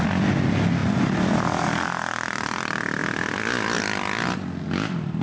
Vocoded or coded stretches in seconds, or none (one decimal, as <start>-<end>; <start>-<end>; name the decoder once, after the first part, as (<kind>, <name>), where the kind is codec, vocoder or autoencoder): none

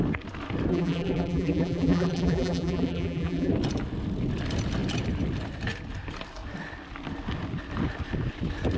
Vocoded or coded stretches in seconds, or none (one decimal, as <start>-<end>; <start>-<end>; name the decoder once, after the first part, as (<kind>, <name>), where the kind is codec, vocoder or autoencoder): 0.7-3.5 (vocoder, BigVGAN v2)

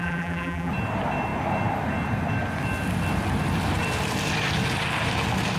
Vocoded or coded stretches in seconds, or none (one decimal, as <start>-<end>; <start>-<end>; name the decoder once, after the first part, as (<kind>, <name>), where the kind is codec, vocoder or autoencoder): 0.0-0.7 (vocoder, BigVGAN v2)